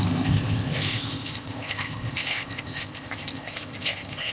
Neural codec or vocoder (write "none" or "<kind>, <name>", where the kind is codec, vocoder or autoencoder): codec, ZipCodec